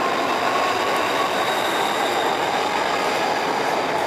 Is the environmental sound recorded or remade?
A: recorded